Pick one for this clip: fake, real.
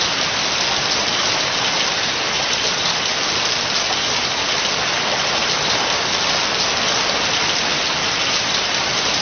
real